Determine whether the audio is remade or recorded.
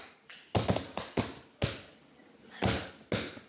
recorded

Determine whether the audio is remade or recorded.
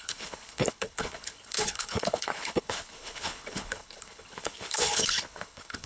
remade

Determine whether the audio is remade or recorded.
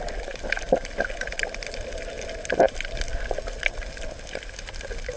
recorded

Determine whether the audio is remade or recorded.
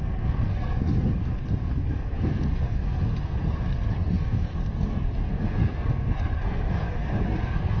remade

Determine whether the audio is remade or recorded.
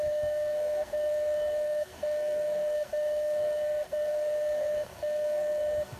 remade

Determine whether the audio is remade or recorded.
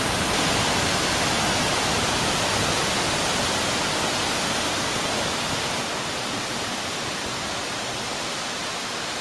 recorded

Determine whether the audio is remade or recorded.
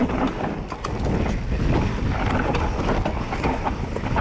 recorded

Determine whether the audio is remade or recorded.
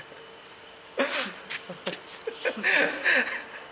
recorded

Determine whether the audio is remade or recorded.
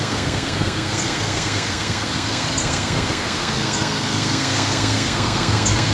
remade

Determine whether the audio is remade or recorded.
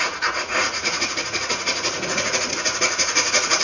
remade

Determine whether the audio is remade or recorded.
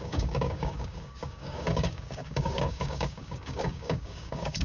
remade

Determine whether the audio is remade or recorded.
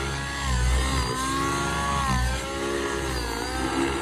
recorded